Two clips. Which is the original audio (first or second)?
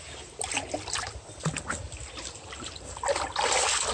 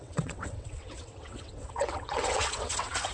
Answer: first